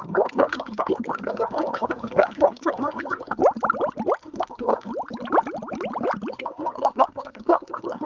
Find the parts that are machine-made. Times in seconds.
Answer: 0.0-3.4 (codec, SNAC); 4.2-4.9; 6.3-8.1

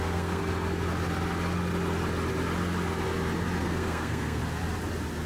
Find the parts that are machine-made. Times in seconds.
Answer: 0.0-0.4 (codec, SNAC); 3.6-4.4